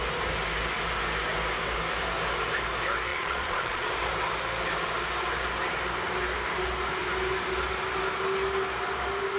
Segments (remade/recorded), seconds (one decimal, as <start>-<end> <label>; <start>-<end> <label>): 0.0-3.1 recorded; 3.1-3.9 remade; 3.9-9.4 recorded